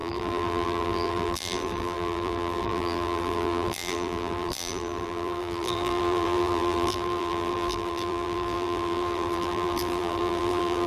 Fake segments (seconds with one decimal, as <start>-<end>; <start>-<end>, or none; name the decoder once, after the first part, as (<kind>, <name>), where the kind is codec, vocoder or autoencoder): 0.0-10.9 (vocoder, BigVGAN v2)